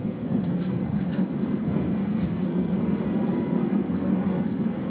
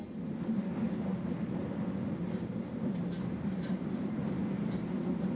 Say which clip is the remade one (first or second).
first